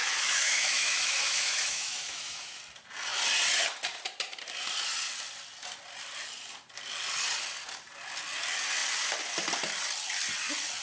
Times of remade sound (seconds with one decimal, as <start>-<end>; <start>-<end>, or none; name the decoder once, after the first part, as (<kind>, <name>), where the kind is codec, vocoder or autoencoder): 0.0-2.6 (autoencoder, DAC-VAE)